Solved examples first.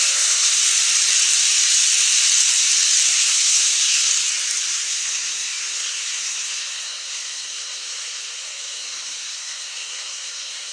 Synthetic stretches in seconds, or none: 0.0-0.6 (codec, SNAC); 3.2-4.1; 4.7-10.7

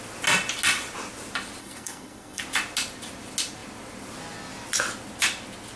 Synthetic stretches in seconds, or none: 1.6-2.4 (codec, SNAC)

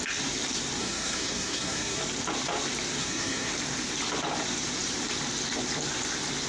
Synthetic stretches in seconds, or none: 0.8-2.0 (codec, SNAC); 3.0-3.5